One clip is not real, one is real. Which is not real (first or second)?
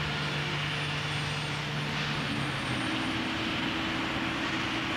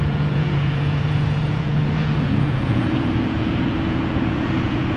second